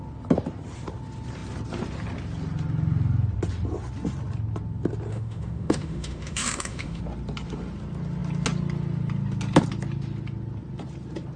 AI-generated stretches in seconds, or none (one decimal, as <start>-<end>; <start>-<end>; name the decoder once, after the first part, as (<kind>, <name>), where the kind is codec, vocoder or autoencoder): 5.1-7.0 (autoencoder, DAC-VAE)